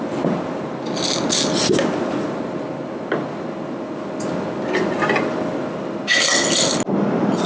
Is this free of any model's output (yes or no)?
yes